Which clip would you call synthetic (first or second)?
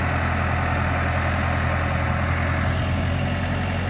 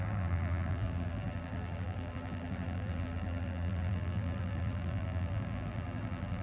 second